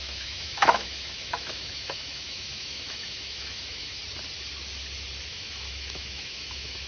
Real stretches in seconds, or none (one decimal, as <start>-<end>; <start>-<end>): 4.0-5.3

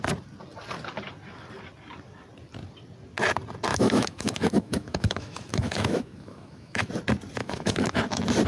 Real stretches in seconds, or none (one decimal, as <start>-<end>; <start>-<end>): 0.0-3.7; 6.9-7.4; 8.0-8.5